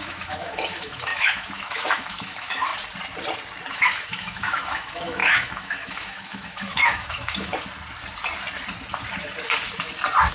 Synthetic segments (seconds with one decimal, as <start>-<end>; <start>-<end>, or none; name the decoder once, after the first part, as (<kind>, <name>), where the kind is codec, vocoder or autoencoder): 0.0-2.7 (autoencoder, DAC-VAE); 3.7-7.5